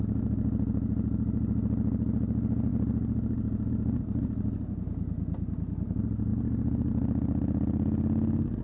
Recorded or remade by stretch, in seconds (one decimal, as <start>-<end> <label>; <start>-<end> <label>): 0.0-8.6 recorded